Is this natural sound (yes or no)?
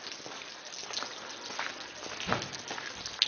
yes